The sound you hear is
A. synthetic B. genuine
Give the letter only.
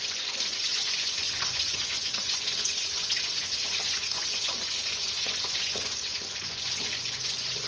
A